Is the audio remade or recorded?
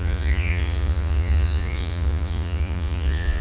remade